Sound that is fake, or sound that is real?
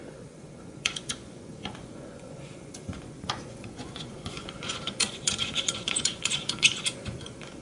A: fake